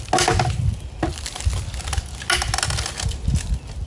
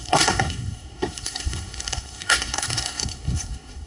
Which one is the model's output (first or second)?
second